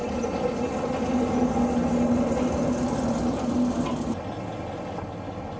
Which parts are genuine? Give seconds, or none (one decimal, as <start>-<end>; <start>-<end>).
1.0-5.6